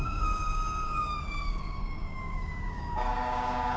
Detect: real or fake fake